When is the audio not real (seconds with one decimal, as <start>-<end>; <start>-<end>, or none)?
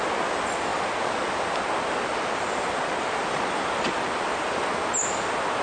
none